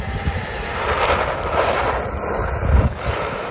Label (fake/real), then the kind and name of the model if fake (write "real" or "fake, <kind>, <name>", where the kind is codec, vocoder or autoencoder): real